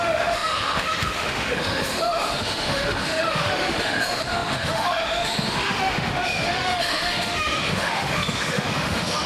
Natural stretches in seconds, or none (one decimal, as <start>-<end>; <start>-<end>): none